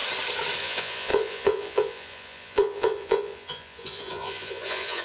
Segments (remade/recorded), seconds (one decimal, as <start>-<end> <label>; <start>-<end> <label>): 0.0-0.6 recorded; 0.6-5.0 remade